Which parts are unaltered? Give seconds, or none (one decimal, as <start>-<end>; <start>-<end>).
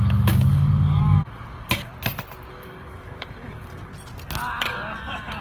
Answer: 1.9-2.5; 3.9-4.6